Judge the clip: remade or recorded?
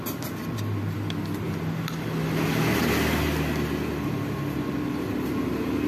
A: recorded